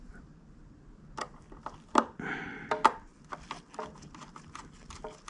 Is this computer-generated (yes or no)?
no